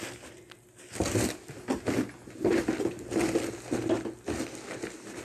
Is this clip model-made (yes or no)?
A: no